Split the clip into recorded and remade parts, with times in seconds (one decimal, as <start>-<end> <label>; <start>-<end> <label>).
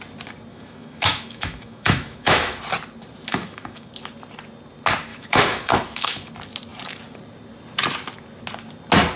0.0-0.5 recorded; 0.5-2.6 remade; 2.6-3.3 recorded; 3.3-3.9 remade; 3.9-5.1 recorded; 5.1-6.3 remade; 6.3-9.2 recorded